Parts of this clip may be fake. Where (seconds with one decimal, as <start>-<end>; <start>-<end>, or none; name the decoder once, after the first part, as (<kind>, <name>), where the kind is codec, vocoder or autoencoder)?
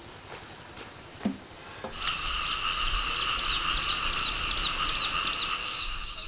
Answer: 5.6-6.3 (codec, DAC)